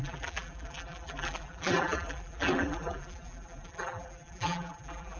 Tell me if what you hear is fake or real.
fake